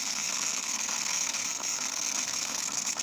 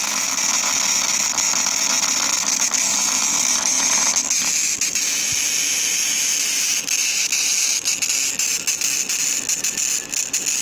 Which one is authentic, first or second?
second